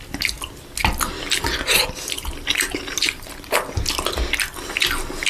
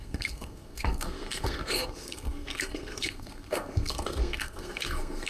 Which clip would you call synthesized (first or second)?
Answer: second